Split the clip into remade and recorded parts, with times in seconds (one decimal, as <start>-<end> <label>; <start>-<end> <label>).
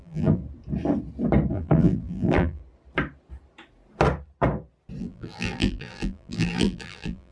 0.0-0.4 remade; 0.4-1.5 recorded; 1.5-2.6 remade; 2.6-5.0 recorded; 5.0-7.3 remade